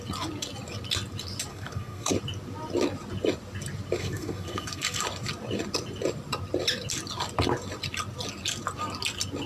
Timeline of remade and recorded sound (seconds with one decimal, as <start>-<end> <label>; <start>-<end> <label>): 0.0-1.5 recorded; 1.5-2.1 remade; 2.1-4.0 recorded; 4.0-5.0 remade; 5.0-9.5 recorded